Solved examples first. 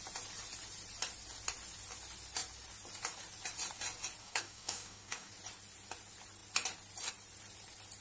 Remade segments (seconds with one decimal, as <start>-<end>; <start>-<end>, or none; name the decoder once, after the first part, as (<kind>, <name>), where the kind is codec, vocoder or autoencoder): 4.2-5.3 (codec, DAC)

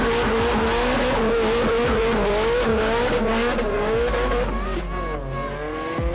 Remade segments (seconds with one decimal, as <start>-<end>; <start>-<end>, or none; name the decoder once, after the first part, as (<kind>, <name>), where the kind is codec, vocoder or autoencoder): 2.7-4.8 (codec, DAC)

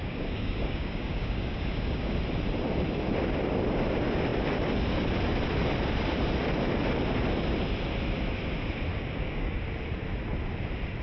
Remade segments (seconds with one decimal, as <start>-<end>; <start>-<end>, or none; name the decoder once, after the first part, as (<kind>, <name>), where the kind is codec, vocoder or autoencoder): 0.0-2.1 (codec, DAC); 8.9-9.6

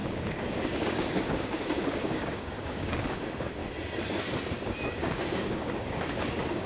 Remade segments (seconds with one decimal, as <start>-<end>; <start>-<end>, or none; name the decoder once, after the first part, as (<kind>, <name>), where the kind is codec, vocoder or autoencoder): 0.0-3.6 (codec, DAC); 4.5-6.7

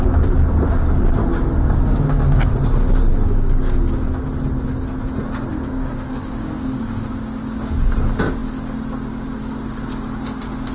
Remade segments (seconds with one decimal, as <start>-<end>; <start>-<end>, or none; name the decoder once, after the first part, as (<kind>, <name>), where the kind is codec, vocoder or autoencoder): 1.2-2.5 (codec, DAC); 3.1-3.8; 5.5-6.9

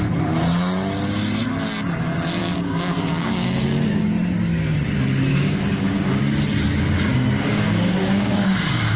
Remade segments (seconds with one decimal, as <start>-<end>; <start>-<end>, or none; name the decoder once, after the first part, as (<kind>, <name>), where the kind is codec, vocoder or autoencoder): 2.4-4.0 (codec, DAC); 5.3-6.2; 7.1-9.0